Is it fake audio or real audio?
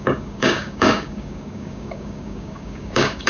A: fake